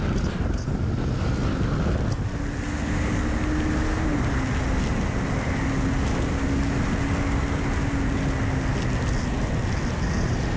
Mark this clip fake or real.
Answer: real